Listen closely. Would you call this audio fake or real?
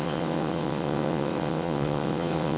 fake